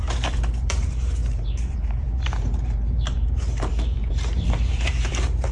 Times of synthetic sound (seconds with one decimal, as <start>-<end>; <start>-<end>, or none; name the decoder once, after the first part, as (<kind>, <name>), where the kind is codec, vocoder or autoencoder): 0.0-5.5 (vocoder, BigVGAN v2)